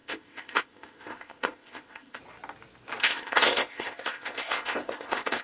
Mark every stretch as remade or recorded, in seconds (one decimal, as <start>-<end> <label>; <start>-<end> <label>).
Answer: 0.0-2.2 remade; 2.2-3.0 recorded; 3.0-5.4 remade